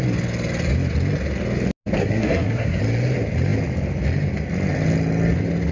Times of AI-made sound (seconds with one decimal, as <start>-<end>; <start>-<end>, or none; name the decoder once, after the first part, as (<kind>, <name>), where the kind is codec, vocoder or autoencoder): 2.0-2.8 (codec, SNAC)